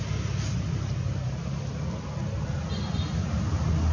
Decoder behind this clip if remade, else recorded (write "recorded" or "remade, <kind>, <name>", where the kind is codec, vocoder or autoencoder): recorded